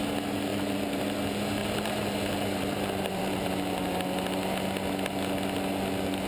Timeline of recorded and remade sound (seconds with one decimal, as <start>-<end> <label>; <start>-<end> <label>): 0.0-0.5 recorded; 0.5-1.0 remade; 1.0-1.6 recorded; 1.6-3.5 remade; 3.5-6.3 recorded